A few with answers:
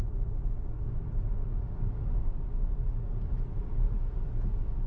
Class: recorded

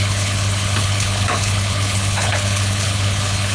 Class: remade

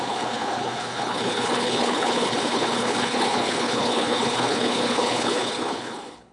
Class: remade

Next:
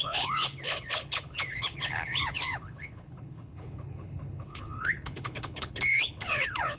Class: remade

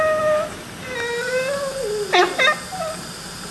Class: recorded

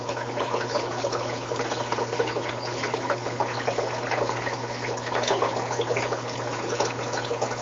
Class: remade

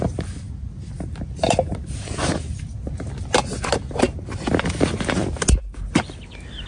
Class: recorded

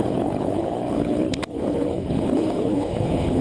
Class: remade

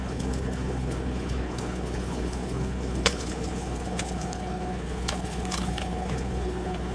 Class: remade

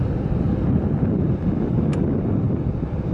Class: recorded